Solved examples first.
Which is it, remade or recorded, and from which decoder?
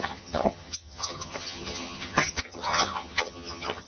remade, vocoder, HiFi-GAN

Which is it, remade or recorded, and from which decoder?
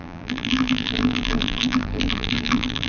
remade, vocoder, BigVGAN v2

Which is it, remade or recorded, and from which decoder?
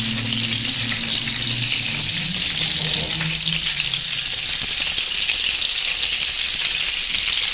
recorded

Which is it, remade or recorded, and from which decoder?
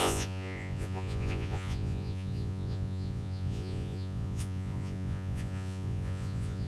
remade, vocoder, Vocos